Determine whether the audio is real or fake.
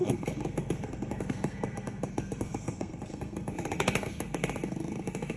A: fake